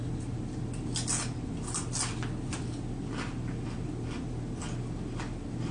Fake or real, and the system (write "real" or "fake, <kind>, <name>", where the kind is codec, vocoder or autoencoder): real